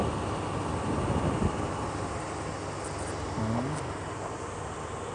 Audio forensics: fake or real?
real